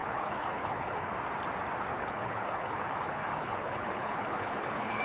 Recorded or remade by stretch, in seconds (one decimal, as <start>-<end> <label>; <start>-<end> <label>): 0.0-1.1 remade; 1.1-1.9 recorded; 1.9-5.0 remade